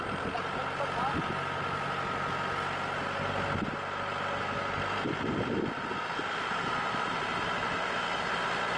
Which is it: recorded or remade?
recorded